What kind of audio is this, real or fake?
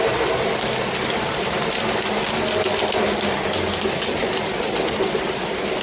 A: real